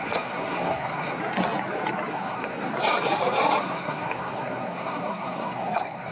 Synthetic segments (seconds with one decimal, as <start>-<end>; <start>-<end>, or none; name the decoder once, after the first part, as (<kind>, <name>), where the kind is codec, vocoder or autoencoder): 0.0-1.2 (codec, SNAC); 2.1-2.7; 3.6-6.1